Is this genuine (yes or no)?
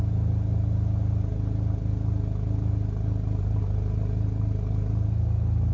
yes